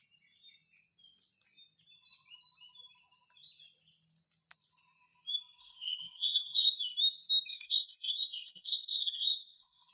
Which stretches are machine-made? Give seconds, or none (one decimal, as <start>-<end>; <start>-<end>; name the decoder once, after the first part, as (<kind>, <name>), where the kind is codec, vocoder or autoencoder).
5.6-6.8 (codec, SNAC); 7.5-9.9